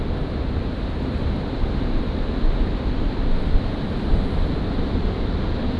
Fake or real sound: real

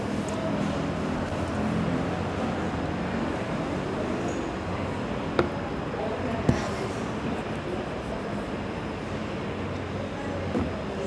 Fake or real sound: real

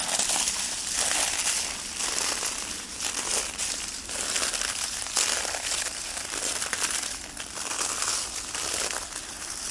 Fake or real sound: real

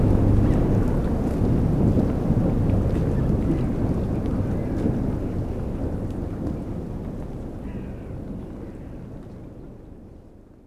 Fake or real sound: real